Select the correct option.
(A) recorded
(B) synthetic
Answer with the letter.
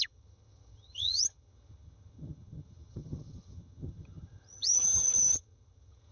B